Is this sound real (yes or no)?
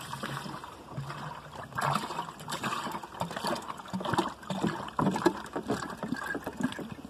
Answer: yes